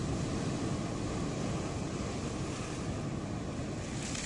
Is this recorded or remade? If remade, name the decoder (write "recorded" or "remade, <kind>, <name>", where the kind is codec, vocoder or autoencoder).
recorded